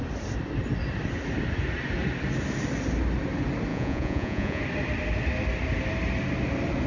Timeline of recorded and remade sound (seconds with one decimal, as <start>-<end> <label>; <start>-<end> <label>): 0.0-3.7 recorded; 3.7-4.6 remade; 4.6-6.9 recorded